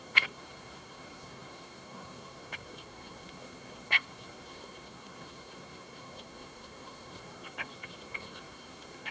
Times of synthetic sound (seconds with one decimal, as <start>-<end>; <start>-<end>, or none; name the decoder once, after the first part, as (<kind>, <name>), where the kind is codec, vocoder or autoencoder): 0.0-9.1 (codec, SNAC)